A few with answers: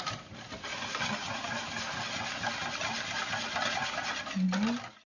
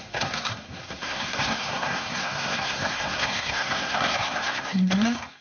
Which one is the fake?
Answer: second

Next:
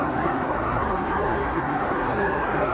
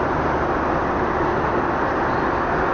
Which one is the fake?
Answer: first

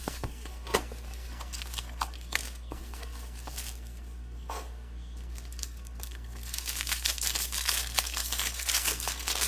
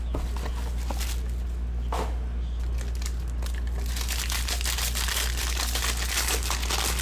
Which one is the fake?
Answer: first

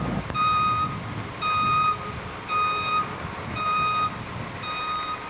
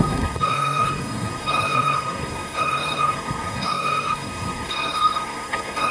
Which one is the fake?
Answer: second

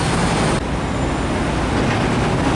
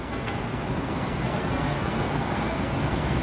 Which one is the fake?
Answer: second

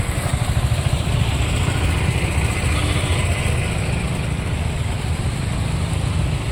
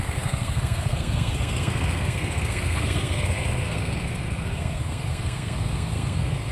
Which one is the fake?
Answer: second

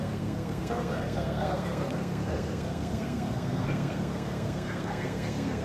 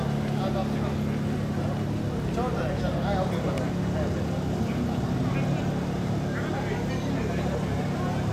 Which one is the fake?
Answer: first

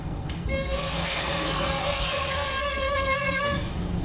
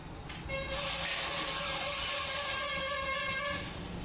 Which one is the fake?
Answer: first